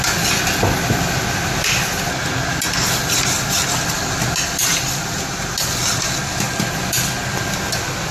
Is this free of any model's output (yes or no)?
yes